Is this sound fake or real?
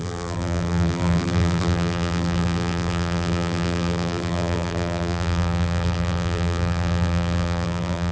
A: fake